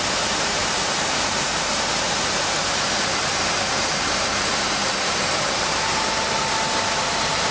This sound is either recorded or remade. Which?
remade